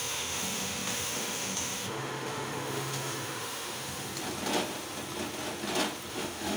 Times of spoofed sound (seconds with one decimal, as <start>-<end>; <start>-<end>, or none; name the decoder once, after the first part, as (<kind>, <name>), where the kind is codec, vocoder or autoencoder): 0.0-4.1 (autoencoder, DAC-VAE); 6.1-6.6

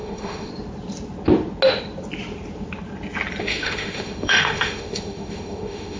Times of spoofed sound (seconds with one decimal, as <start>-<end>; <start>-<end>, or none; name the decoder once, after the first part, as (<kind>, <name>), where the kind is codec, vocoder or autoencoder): 0.0-0.5 (autoencoder, DAC-VAE); 3.4-6.0

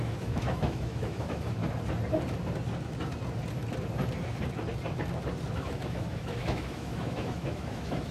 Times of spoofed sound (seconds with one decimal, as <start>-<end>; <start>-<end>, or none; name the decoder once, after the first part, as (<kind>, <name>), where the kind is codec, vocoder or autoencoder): 0.0-1.6 (autoencoder, DAC-VAE); 5.5-8.1